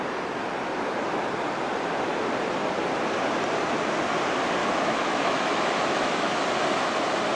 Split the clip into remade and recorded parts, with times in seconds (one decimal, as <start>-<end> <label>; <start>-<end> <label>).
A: 0.0-4.6 recorded; 4.6-6.3 remade; 6.3-7.4 recorded